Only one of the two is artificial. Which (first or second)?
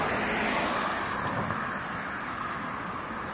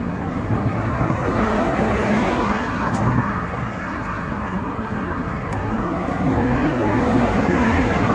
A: second